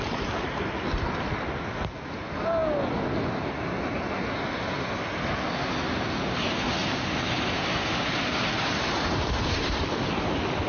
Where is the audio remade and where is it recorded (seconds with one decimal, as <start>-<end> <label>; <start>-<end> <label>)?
0.0-6.8 recorded; 6.8-10.1 remade; 10.1-10.7 recorded